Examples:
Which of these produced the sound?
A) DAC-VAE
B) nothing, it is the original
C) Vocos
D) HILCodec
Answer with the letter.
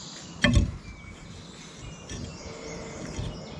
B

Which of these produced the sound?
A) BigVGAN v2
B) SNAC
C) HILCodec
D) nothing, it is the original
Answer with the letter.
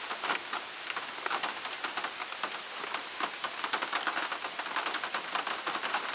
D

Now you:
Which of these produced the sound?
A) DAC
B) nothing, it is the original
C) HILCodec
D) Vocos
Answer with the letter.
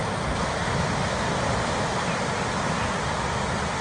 B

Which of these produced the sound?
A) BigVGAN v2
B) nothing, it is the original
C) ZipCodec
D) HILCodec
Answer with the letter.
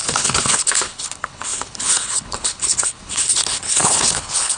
D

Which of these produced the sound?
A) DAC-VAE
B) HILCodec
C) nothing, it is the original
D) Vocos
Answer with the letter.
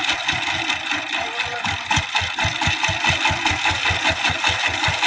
C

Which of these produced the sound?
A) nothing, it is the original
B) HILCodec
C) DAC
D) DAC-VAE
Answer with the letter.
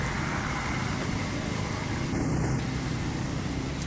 A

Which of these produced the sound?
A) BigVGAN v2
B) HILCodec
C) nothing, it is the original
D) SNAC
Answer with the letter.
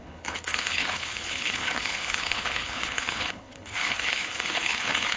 B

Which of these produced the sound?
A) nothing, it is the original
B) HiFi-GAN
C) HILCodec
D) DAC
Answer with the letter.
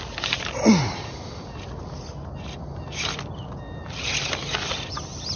A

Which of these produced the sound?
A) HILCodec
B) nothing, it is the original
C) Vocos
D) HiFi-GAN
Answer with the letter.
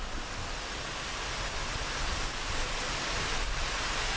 B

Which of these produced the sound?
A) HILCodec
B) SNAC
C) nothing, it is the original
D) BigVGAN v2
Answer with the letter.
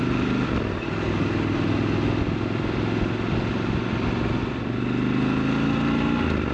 C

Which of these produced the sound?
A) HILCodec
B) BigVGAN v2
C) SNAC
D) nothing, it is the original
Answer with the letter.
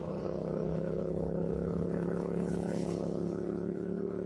A